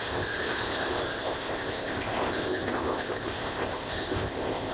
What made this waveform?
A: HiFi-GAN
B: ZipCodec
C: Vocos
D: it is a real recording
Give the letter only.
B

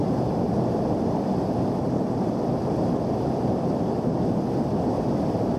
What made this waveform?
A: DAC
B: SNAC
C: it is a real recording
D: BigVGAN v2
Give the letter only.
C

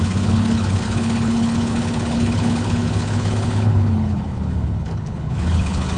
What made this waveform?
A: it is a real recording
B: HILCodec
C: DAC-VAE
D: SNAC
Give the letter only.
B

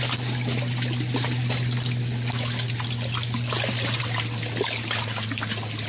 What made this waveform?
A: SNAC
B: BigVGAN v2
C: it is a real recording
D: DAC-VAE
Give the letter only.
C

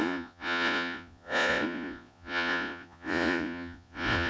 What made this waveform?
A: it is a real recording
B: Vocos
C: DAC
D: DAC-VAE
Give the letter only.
B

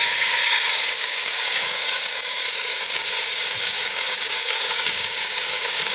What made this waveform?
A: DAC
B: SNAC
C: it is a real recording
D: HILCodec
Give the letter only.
A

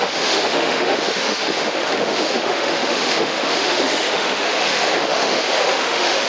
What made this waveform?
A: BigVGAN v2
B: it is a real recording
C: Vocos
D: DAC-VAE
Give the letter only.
D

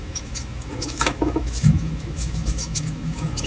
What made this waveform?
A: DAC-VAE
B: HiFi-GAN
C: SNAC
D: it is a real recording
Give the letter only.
A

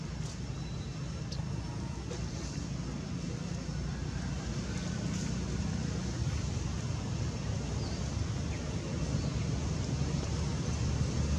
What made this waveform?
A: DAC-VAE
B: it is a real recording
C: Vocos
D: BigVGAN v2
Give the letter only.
B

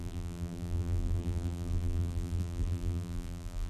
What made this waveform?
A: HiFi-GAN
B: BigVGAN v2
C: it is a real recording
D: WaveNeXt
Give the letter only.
B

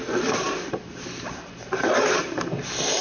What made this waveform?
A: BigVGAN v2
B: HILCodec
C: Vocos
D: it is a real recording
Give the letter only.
A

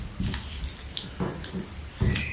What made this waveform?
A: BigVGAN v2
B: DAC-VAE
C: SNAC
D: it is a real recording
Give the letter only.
D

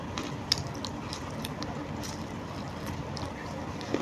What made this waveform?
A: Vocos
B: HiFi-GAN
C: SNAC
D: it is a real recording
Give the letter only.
D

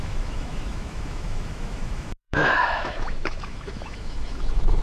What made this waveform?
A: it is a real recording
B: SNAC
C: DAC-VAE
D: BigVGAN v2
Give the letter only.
C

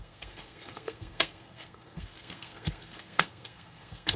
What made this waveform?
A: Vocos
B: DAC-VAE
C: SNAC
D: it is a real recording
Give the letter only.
C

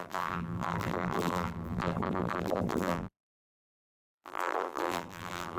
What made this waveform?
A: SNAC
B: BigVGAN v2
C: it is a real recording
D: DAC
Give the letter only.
B